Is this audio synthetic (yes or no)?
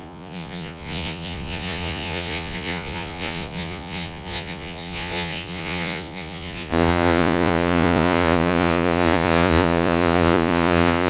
yes